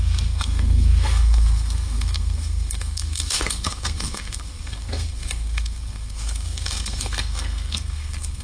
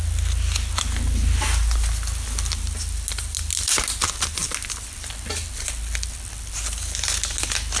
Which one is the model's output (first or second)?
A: first